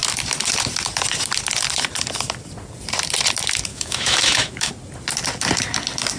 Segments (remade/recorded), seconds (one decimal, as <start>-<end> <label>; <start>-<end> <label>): 0.0-3.7 recorded; 3.7-4.7 remade; 4.7-6.2 recorded